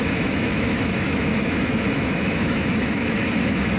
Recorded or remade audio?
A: remade